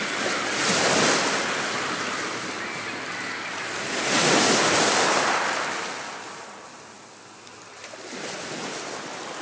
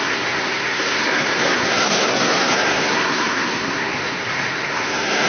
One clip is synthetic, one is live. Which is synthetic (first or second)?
second